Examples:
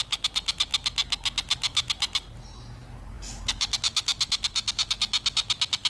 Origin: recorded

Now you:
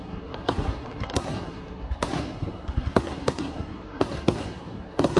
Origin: remade